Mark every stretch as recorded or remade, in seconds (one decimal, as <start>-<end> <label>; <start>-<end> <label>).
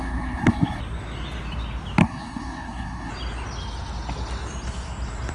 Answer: 0.0-0.8 remade; 0.8-2.0 recorded; 2.0-3.1 remade; 3.1-5.3 recorded